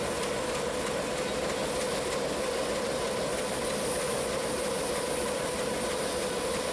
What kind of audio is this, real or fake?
real